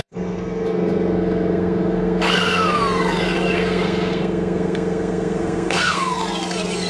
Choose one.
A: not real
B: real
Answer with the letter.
A